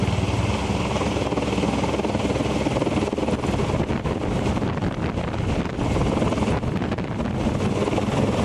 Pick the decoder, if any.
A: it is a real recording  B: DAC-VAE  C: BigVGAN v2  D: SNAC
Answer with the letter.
A